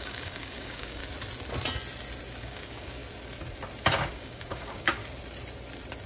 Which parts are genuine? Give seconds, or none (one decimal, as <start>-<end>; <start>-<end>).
1.0-2.4; 3.0-4.1; 5.0-6.1